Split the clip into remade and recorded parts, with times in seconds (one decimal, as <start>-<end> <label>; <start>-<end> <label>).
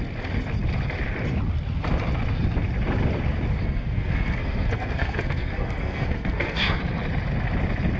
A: 0.0-3.6 recorded; 3.6-6.8 remade; 6.8-8.0 recorded